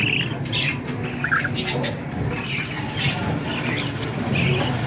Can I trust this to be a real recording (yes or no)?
yes